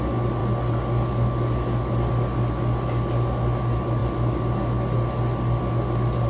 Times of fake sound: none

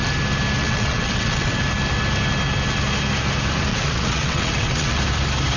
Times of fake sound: 0.6-1.6; 3.7-5.0

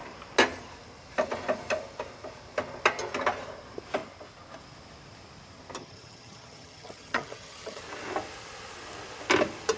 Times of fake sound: 5.8-7.8

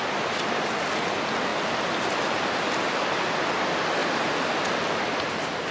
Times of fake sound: none

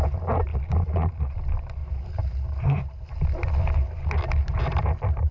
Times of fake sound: 0.5-1.1

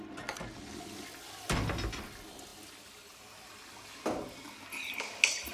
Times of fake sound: none

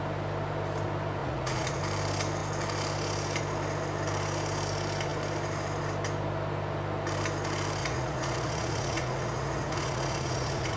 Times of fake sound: 1.2-1.8; 7.8-10.8